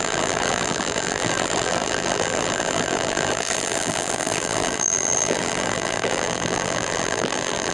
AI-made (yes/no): yes